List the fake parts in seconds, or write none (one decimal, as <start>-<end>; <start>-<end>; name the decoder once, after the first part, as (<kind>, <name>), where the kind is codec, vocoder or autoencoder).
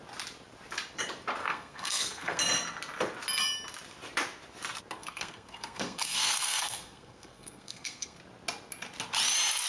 1.4-2.4 (codec, SNAC); 5.0-8.2